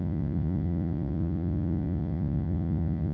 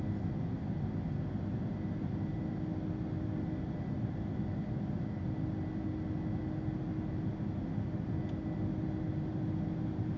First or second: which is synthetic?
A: first